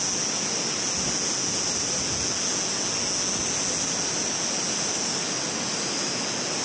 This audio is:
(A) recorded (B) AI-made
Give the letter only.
A